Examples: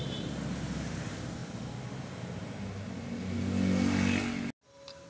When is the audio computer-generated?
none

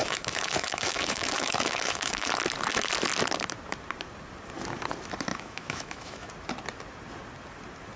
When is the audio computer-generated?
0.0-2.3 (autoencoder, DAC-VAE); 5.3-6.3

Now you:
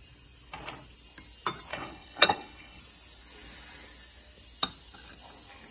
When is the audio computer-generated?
1.7-2.8 (codec, HILCodec)